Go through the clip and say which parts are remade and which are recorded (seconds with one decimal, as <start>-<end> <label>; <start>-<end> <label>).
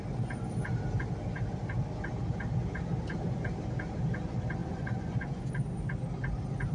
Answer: 0.0-4.6 recorded; 4.6-5.5 remade; 5.5-6.7 recorded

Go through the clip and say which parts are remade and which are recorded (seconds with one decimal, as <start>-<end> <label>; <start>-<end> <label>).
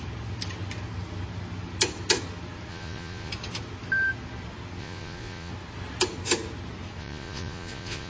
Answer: 0.0-2.7 recorded; 2.7-3.3 remade; 3.3-4.8 recorded; 4.8-5.5 remade; 5.5-7.0 recorded; 7.0-8.1 remade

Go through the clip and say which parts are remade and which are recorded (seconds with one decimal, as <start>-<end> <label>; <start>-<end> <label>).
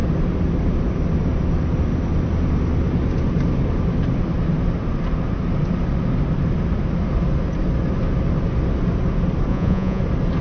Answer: 0.0-9.5 recorded; 9.5-10.0 remade; 10.0-10.4 recorded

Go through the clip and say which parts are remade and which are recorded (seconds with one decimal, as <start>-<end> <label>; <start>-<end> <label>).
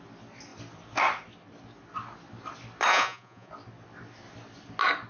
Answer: 0.0-2.9 recorded; 2.9-3.5 remade; 3.5-5.1 recorded